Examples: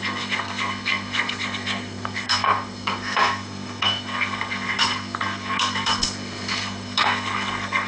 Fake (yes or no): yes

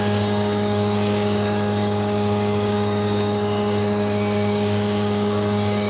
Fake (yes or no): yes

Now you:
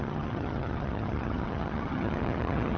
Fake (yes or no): yes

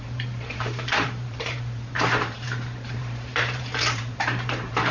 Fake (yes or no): yes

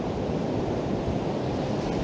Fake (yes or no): no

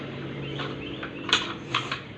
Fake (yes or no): yes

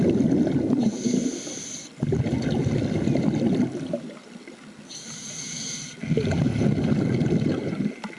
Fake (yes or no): no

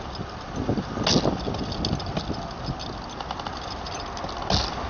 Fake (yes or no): no